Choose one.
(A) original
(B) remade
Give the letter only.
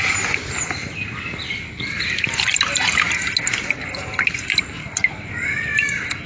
A